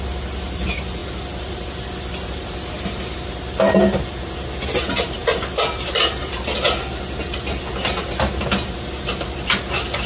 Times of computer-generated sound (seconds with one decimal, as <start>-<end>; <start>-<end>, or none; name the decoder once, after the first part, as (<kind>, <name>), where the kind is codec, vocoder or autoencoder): none

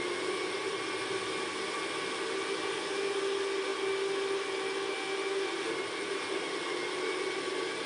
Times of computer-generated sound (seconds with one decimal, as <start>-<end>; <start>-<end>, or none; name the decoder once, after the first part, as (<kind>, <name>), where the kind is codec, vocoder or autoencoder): none

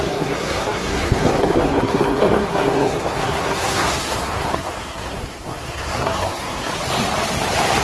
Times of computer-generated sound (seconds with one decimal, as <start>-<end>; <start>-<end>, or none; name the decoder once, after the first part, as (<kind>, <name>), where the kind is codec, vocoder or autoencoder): 0.0-6.7 (codec, SNAC)

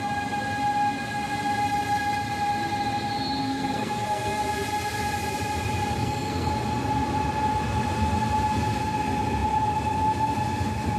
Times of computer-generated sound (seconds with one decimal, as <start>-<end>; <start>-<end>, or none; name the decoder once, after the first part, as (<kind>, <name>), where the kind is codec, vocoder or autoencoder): 3.4-4.4 (codec, SNAC); 6.0-6.5

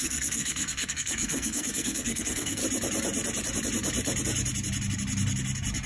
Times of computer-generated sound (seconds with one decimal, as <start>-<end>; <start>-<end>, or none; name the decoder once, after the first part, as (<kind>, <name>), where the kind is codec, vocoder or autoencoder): 0.0-2.6 (codec, SNAC)